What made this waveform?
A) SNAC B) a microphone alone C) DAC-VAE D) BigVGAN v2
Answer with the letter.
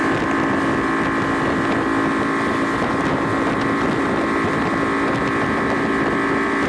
B